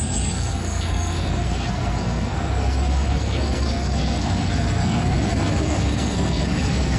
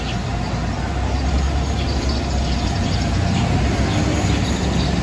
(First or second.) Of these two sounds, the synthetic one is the first